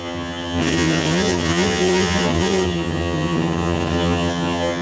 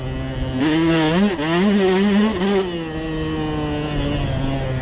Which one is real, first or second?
second